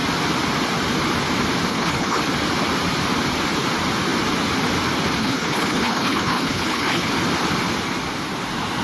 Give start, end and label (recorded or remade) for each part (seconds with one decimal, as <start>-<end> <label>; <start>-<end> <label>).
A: 0.0-1.7 recorded; 1.7-2.2 remade; 2.2-5.2 recorded; 5.2-7.1 remade; 7.1-8.8 recorded